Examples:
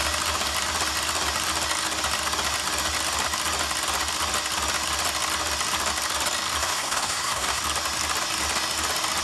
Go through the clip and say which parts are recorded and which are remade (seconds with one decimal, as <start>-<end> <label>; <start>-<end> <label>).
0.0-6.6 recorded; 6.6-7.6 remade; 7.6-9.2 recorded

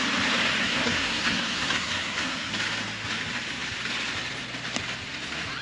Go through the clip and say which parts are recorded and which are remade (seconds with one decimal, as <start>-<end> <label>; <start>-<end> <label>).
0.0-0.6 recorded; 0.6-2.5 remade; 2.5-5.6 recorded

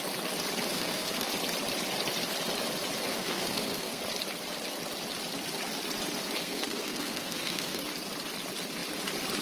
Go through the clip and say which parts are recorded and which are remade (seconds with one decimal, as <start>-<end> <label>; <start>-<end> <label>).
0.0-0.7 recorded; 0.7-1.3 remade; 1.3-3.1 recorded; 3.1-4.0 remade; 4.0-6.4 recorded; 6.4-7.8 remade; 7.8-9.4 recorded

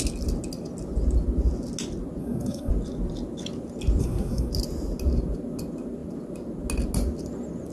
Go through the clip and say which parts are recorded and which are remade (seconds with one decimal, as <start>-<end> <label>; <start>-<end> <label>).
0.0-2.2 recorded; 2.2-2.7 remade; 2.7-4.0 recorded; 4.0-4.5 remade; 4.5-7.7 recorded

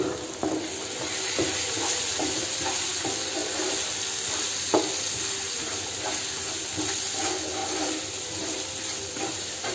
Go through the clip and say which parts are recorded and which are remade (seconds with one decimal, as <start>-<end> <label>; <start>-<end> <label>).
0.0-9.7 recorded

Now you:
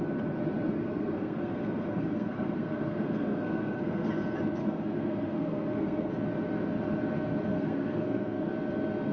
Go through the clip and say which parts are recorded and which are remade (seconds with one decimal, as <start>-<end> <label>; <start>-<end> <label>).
0.0-0.7 recorded; 0.7-4.1 remade; 4.1-4.6 recorded; 4.6-6.1 remade; 6.1-7.5 recorded; 7.5-8.5 remade; 8.5-9.1 recorded

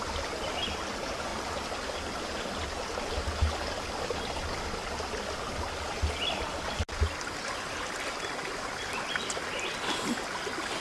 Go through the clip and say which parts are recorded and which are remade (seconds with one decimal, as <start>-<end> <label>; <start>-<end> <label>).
0.0-10.8 recorded